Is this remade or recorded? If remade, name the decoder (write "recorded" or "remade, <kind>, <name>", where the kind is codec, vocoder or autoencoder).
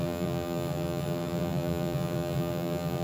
remade, vocoder, BigVGAN v2